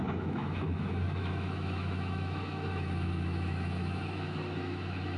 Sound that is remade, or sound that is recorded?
remade